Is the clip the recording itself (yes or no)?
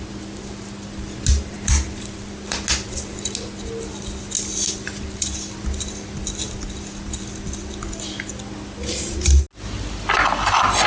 yes